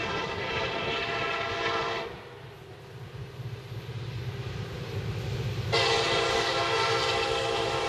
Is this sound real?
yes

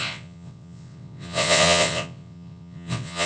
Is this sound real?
no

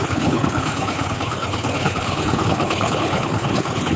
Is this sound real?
no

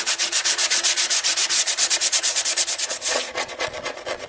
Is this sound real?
no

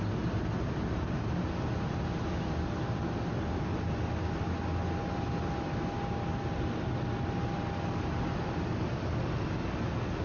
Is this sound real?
yes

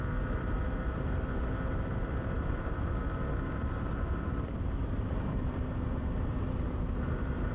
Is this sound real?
no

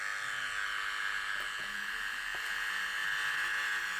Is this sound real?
yes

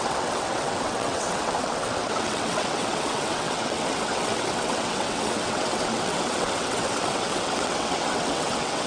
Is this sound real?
no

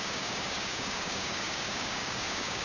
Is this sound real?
no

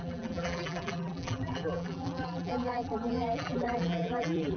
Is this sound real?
no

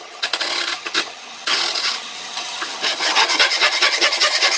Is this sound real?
no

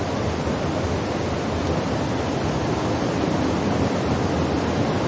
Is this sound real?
yes